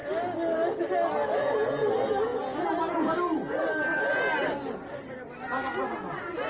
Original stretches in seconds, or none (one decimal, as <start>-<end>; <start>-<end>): 0.0-6.5